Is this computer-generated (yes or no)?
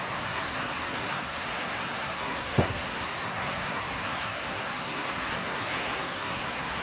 yes